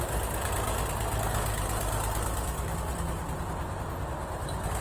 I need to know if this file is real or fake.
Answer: real